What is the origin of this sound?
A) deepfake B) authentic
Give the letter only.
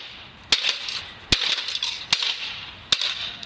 B